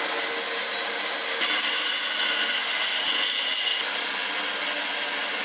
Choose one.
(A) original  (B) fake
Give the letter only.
A